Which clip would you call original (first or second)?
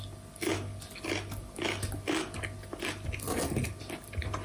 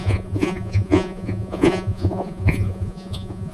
first